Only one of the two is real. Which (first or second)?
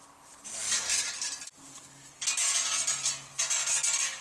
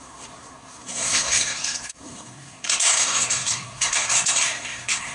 first